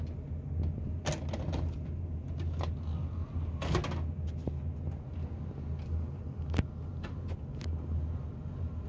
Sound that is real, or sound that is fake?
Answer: real